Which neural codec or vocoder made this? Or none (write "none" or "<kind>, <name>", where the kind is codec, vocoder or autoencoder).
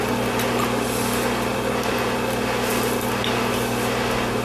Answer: none